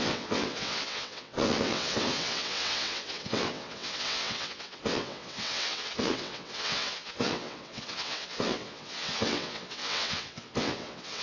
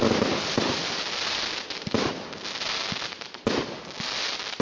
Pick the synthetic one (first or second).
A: first